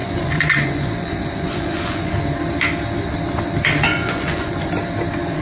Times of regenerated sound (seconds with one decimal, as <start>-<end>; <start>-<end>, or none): 0.0-2.1; 3.9-4.7